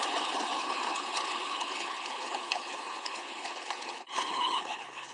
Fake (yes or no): yes